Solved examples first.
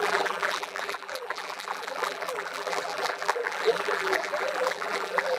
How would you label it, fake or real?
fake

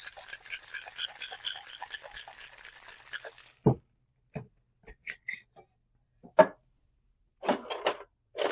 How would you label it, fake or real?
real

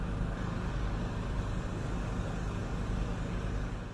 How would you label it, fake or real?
fake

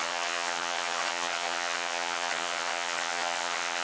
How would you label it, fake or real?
fake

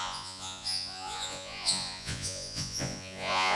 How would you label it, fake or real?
fake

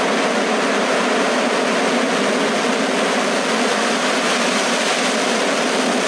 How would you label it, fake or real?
real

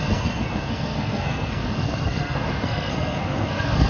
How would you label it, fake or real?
fake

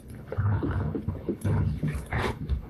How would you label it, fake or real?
fake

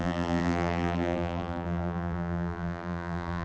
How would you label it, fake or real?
fake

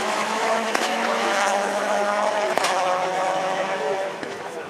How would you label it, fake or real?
fake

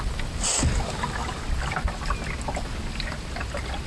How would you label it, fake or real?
real